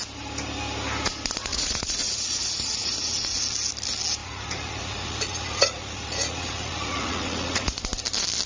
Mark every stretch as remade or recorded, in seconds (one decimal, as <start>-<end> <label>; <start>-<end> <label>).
0.0-1.5 recorded; 1.5-3.4 remade; 3.4-4.2 recorded; 4.2-7.8 remade; 7.8-8.5 recorded